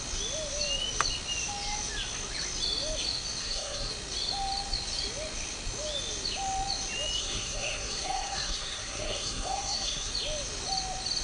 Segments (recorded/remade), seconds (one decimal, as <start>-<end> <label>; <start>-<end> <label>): 0.0-3.4 recorded; 3.4-3.9 remade; 3.9-7.2 recorded; 7.2-10.1 remade; 10.1-11.2 recorded